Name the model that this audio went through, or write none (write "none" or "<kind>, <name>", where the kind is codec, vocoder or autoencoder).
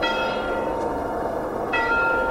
autoencoder, DAC-VAE